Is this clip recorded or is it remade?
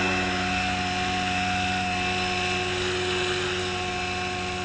recorded